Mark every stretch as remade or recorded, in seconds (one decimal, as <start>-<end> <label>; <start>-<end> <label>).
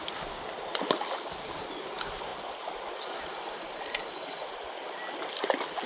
0.0-5.9 recorded